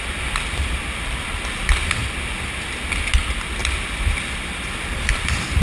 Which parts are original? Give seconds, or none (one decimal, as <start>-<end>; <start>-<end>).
0.0-3.6